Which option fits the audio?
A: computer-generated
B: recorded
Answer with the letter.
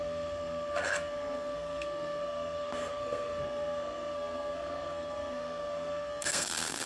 A